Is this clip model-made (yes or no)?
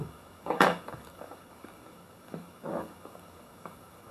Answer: yes